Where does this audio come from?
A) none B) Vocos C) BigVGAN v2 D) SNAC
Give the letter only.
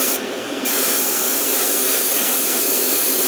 D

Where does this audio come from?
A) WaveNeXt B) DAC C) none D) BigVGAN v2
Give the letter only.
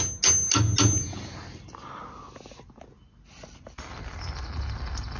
C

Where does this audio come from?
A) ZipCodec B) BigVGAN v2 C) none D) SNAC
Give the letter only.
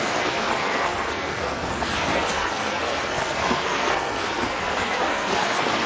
D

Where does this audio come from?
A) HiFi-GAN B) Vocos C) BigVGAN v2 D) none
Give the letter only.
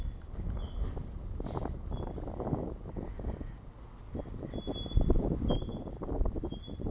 D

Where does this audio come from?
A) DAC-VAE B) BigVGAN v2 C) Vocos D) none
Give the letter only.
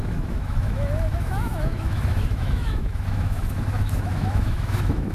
A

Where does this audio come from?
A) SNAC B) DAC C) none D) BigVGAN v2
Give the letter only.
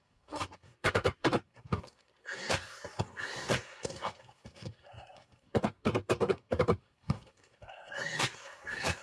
A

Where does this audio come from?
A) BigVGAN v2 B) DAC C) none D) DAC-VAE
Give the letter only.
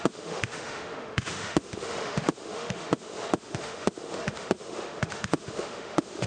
D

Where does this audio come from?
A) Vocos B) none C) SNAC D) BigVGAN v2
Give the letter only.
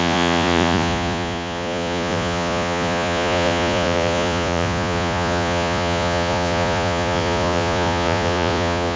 A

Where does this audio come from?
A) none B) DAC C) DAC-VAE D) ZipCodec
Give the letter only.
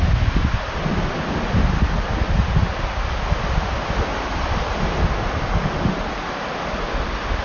A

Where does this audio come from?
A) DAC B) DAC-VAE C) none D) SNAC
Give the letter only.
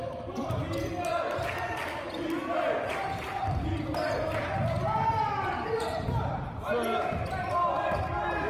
C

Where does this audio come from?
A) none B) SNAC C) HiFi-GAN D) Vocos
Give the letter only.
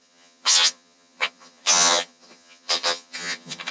C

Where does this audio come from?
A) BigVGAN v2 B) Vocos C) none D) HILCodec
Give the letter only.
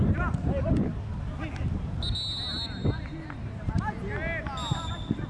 C